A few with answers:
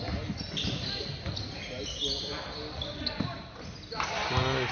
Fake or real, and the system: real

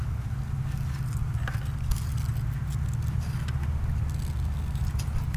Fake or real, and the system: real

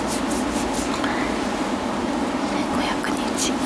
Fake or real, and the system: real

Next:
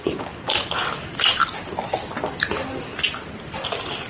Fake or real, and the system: real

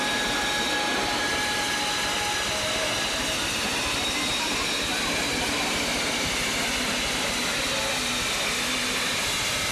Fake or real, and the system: real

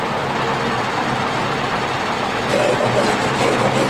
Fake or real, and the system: real